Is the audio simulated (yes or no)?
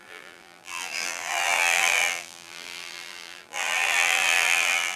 yes